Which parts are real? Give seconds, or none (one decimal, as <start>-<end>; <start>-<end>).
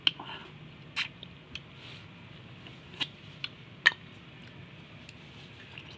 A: 0.0-6.0